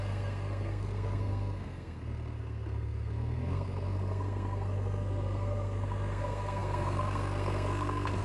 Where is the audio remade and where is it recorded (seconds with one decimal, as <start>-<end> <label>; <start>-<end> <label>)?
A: 0.0-8.2 remade